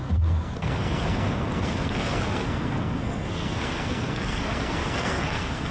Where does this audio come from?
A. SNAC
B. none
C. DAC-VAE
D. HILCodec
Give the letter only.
A